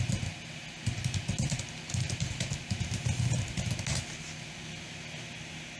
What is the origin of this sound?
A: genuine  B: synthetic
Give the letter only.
A